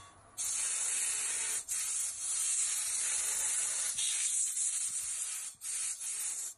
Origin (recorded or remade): recorded